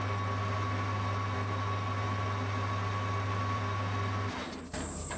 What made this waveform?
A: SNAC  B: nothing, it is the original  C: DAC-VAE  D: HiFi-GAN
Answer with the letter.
B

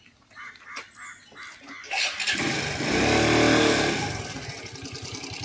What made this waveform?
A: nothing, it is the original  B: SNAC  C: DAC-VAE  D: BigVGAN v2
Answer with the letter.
A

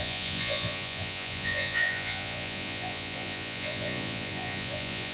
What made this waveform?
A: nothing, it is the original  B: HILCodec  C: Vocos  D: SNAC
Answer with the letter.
C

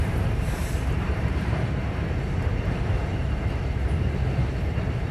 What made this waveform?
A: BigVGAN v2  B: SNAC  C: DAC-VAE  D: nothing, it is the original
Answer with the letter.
A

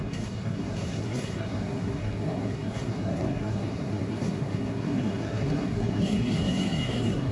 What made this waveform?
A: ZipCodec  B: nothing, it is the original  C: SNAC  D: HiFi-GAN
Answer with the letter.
C